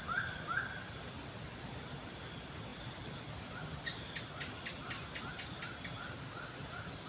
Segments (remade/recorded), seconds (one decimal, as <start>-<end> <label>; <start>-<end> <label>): 0.0-7.1 recorded